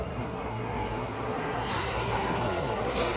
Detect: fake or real fake